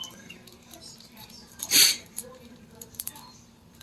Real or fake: fake